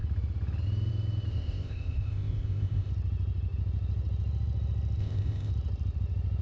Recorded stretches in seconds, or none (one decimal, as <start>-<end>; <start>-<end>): 0.0-1.3; 2.9-5.0; 5.5-6.4